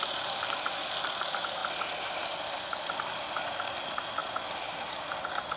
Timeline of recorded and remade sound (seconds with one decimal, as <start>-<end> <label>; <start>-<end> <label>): 0.0-5.6 recorded